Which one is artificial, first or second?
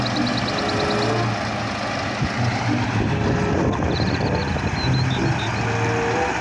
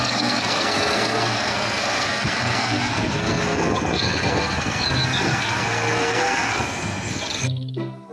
second